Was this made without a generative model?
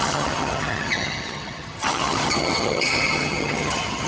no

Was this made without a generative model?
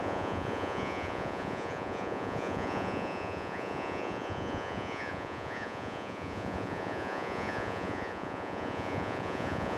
no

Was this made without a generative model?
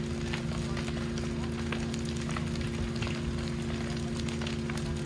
yes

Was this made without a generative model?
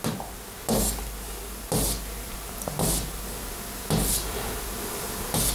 yes